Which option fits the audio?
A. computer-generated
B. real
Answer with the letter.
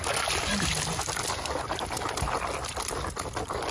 B